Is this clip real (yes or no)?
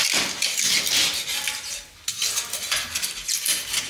yes